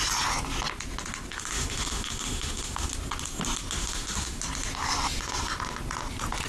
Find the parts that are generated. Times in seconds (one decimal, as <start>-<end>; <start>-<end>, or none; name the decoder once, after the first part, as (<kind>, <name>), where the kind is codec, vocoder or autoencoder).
1.3-2.9 (autoencoder, DAC-VAE); 3.8-4.4